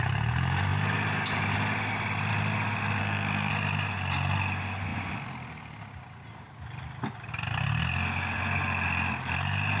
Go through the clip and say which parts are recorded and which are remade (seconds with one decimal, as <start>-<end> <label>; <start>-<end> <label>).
0.0-3.0 recorded; 3.0-3.5 remade; 3.5-9.8 recorded